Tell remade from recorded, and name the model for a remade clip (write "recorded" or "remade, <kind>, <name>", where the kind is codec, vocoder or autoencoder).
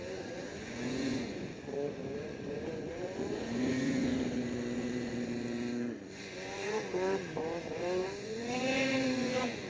remade, vocoder, Vocos